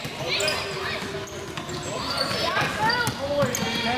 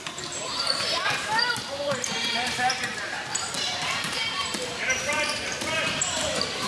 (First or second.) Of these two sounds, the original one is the first